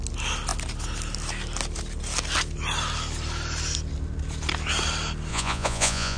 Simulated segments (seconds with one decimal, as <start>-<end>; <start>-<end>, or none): 5.3-6.2